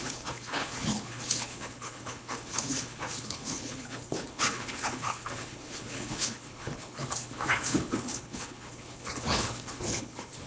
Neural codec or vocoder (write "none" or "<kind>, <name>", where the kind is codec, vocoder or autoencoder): codec, HILCodec